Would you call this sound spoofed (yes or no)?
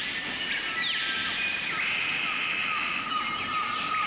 yes